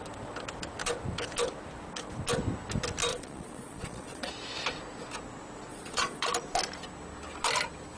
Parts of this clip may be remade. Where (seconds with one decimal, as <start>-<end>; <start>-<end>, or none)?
3.1-4.3; 5.7-6.3